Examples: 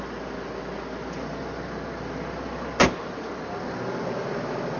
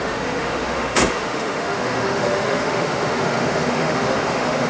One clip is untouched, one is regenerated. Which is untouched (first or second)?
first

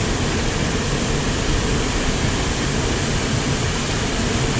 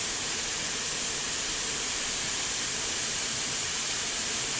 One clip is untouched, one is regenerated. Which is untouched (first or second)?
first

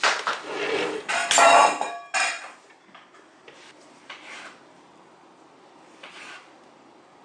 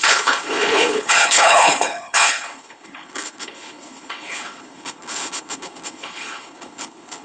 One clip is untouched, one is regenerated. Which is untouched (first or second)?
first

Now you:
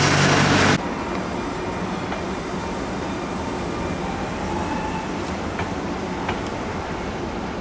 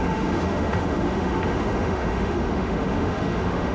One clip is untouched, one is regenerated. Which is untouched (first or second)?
first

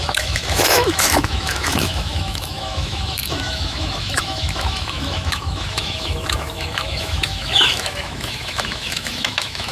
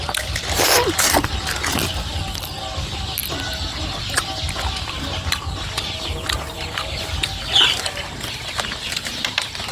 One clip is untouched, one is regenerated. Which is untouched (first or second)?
second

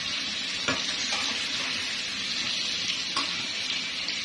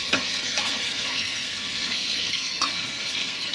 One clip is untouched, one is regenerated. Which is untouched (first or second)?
first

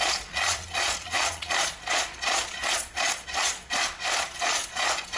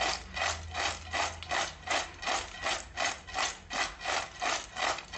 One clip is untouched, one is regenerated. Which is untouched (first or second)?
second